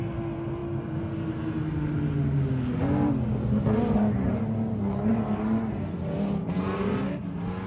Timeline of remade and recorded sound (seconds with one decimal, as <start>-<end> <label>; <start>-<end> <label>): 0.0-7.7 recorded